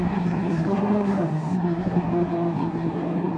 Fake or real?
fake